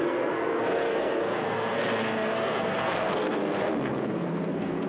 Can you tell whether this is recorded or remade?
remade